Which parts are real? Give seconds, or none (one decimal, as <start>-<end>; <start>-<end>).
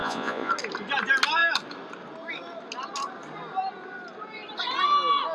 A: 0.5-5.3